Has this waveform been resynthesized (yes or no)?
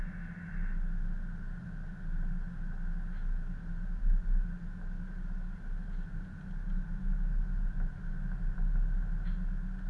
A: no